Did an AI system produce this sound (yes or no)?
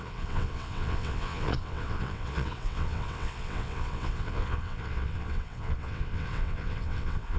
yes